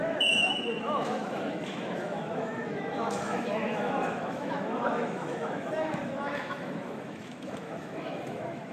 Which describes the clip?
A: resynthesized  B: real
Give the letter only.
A